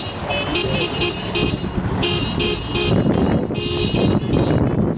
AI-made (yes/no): no